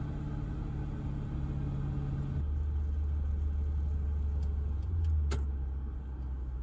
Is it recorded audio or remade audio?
recorded